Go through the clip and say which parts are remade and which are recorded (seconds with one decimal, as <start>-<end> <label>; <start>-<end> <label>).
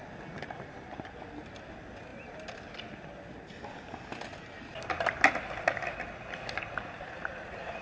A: 0.0-7.8 recorded